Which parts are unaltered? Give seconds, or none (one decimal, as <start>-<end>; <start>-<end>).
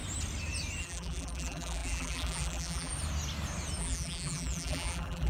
0.0-0.8; 2.9-3.8